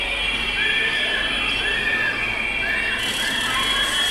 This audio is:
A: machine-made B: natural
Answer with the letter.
B